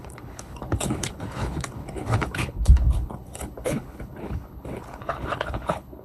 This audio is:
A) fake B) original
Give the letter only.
A